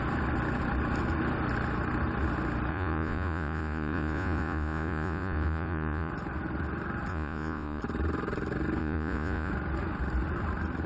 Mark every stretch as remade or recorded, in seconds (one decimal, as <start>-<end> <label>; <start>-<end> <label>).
0.0-2.7 recorded; 2.7-6.1 remade; 6.1-7.1 recorded; 7.1-7.8 remade; 7.8-8.8 recorded; 8.8-9.5 remade; 9.5-10.9 recorded

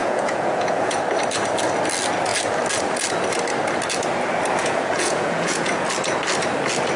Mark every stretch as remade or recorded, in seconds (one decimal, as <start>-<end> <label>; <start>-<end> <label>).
0.0-1.0 remade; 1.0-4.6 recorded; 4.6-5.9 remade; 5.9-7.0 recorded

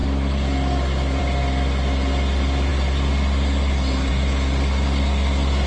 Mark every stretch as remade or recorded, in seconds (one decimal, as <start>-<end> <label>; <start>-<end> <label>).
0.0-5.7 recorded

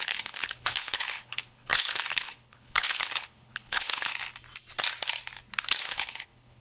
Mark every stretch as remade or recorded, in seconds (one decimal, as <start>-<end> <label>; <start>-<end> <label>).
0.0-4.1 remade; 4.1-5.8 recorded; 5.8-6.6 remade